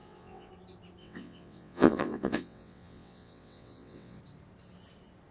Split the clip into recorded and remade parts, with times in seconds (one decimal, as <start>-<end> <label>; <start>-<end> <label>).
0.0-0.5 remade; 0.5-1.0 recorded; 1.0-4.2 remade; 4.2-5.3 recorded